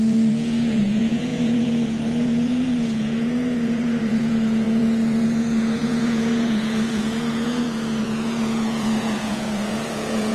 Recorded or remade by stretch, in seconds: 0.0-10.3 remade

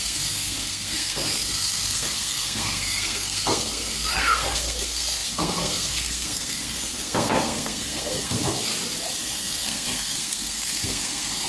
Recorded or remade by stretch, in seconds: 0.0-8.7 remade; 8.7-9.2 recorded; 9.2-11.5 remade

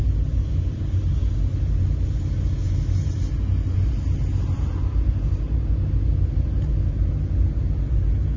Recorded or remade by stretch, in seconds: 0.0-8.4 recorded

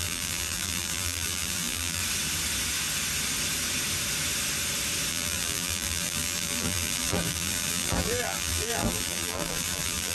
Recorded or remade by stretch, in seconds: 0.0-2.0 remade; 2.0-5.1 recorded; 5.1-10.1 remade

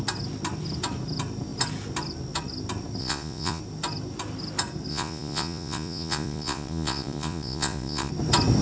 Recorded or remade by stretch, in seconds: 0.0-3.0 recorded; 3.0-3.6 remade; 3.6-4.9 recorded; 4.9-8.1 remade; 8.1-8.6 recorded

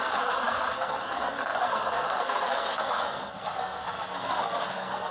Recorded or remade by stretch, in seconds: 0.0-5.1 remade

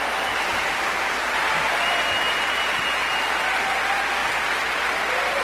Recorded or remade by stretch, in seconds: 0.0-5.4 recorded

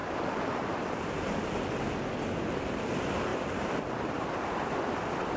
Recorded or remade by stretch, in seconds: 0.0-3.3 recorded; 3.3-4.9 remade; 4.9-5.4 recorded